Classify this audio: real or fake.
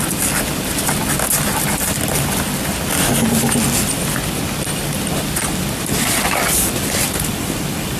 real